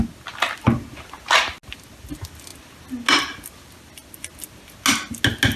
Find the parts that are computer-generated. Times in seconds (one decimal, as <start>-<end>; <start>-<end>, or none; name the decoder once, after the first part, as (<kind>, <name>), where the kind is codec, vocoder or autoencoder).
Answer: none